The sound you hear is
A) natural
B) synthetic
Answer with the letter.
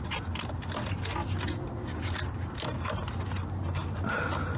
A